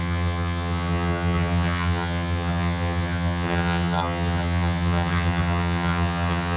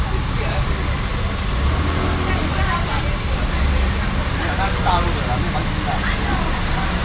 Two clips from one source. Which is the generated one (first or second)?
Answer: first